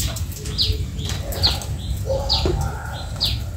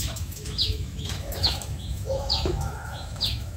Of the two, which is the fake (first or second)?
second